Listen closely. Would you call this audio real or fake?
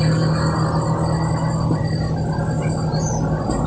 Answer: real